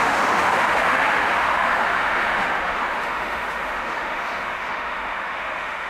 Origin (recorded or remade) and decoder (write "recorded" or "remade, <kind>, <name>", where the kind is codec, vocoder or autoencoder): remade, autoencoder, DAC-VAE